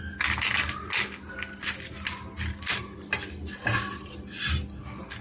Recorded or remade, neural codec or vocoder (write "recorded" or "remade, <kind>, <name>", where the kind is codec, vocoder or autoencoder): recorded